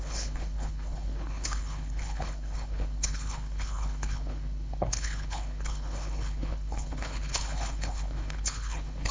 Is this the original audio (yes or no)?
no